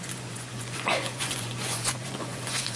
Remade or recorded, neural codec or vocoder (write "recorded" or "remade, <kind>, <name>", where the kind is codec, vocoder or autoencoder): remade, vocoder, Vocos